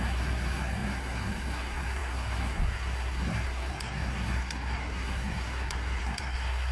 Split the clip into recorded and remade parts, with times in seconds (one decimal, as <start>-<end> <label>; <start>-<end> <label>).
0.0-6.7 remade